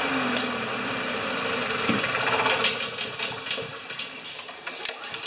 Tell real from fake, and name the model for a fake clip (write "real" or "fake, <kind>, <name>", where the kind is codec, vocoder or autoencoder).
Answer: real